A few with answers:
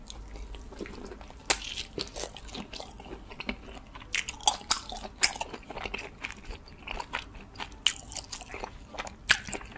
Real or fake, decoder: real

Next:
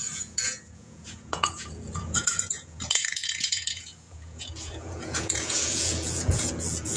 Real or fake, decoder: fake, vocoder, Vocos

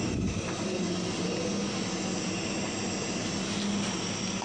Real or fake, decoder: real